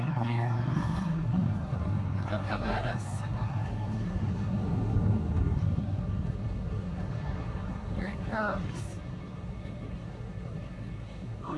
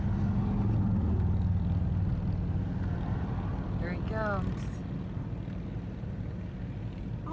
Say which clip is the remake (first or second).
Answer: first